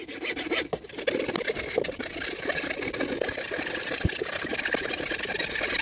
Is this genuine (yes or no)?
yes